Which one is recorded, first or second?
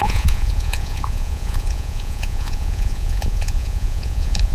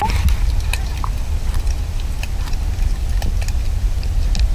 second